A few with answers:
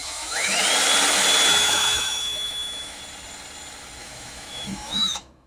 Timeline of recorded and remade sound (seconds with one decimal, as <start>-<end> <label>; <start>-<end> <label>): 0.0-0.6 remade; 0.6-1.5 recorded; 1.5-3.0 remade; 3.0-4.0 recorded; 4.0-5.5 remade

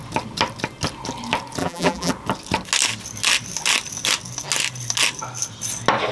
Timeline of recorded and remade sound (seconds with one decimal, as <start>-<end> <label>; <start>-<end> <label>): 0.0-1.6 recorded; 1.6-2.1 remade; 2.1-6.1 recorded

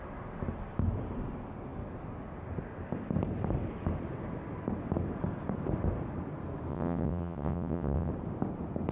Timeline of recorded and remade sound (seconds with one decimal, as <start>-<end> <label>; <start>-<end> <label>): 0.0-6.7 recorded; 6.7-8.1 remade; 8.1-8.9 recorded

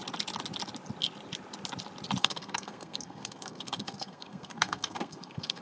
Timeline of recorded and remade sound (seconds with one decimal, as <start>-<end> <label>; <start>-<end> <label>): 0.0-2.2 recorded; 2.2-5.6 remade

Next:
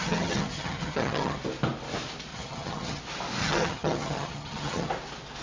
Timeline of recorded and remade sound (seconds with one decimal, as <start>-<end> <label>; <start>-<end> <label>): 0.0-1.4 remade; 1.4-2.3 recorded; 2.3-3.0 remade; 3.0-3.4 recorded; 3.4-4.9 remade; 4.9-5.4 recorded

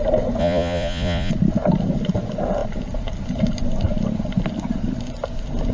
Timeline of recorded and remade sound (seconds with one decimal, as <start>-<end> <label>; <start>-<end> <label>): 0.0-0.4 recorded; 0.4-1.3 remade; 1.3-5.7 recorded

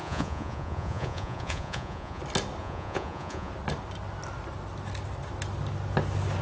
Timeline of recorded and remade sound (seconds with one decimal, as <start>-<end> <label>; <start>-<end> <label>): 0.0-2.2 remade; 2.2-2.6 recorded; 2.6-3.5 remade; 3.5-6.4 recorded

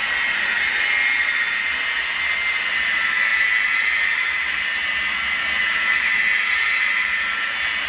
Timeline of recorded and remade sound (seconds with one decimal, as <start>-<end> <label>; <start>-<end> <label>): 0.0-7.9 recorded